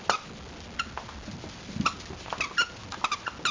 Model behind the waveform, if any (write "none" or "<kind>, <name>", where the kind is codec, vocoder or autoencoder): none